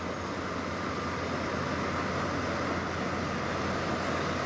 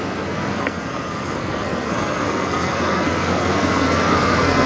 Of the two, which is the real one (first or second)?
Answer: first